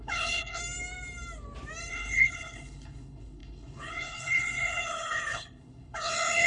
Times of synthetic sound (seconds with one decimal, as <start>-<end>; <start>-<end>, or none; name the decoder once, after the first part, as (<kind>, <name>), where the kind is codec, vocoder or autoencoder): 0.0-0.6 (codec, HILCodec); 1.9-6.5